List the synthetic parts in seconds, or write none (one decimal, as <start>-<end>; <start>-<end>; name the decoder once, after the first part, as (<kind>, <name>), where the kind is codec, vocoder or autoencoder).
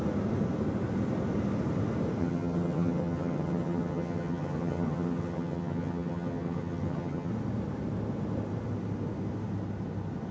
2.2-7.3 (vocoder, HiFi-GAN)